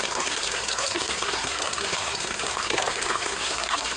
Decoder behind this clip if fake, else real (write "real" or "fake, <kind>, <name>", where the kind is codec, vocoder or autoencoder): fake, codec, SNAC